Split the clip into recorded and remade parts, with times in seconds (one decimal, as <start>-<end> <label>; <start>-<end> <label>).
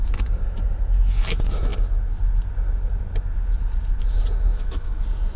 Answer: 0.0-4.5 recorded; 4.5-5.0 remade; 5.0-5.4 recorded